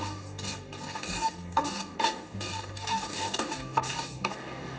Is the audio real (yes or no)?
no